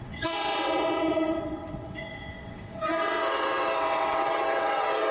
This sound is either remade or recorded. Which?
remade